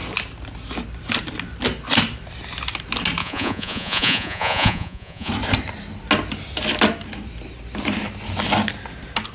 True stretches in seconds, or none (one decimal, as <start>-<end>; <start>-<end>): 0.0-3.2; 5.3-9.3